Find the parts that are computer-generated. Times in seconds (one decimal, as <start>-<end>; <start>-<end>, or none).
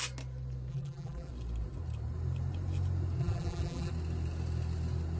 0.7-1.3; 3.2-3.9